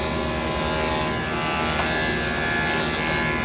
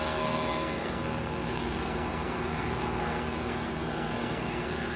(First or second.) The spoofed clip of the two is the second